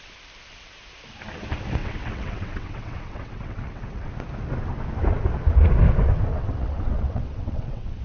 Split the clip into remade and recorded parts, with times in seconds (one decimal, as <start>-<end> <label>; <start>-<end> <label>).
0.0-1.8 recorded; 1.8-4.1 remade; 4.1-6.3 recorded; 6.3-8.0 remade